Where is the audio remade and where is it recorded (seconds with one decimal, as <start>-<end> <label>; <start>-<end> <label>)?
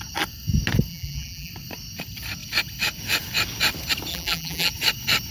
0.0-0.9 recorded; 0.9-1.5 remade; 1.5-4.1 recorded; 4.1-4.7 remade; 4.7-5.3 recorded